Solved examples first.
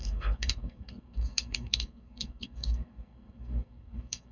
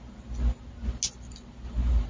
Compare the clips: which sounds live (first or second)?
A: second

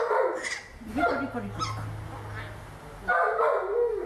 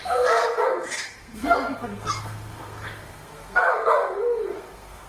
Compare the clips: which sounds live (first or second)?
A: first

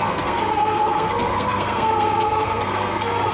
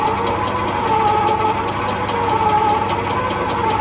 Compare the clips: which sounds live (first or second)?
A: second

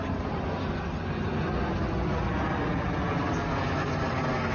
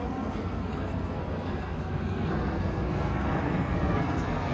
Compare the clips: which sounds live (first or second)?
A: first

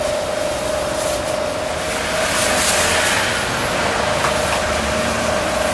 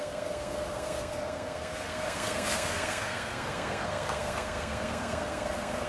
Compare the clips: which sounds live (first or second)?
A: first